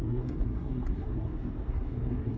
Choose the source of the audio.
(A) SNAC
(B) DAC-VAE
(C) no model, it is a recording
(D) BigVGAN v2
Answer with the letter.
A